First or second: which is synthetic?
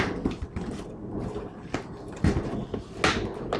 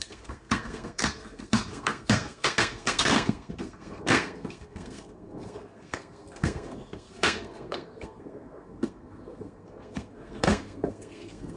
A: second